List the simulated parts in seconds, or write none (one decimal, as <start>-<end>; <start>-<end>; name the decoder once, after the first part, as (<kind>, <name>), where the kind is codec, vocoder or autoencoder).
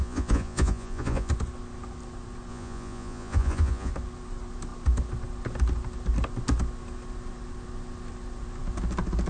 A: 0.0-1.3 (vocoder, Vocos); 2.5-3.9